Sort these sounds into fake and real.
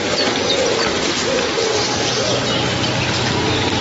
real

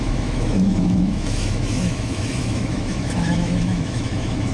fake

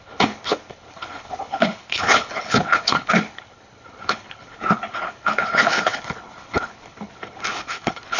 fake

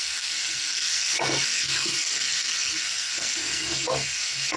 fake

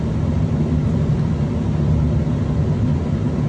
real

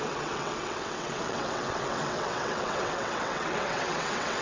fake